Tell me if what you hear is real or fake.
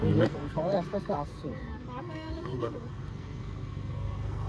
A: fake